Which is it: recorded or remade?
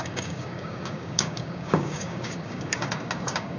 remade